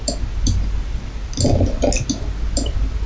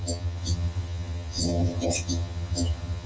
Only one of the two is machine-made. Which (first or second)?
second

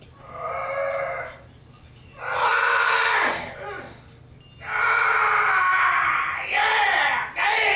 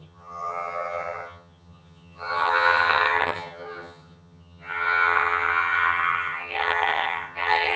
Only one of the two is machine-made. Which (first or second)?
second